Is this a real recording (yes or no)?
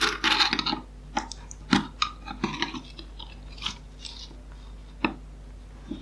yes